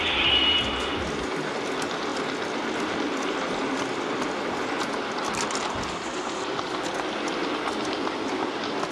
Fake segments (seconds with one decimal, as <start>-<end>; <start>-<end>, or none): none